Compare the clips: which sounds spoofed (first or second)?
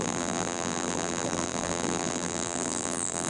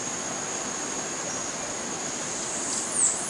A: first